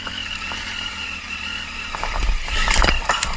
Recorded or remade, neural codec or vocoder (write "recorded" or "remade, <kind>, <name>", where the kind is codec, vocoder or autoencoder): recorded